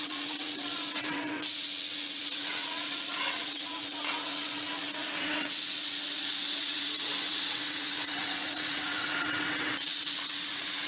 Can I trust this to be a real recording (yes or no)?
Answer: no